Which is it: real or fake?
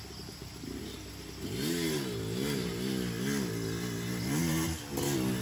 real